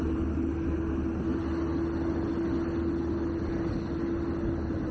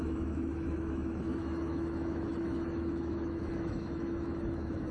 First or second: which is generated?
second